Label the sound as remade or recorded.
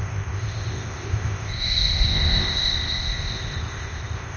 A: remade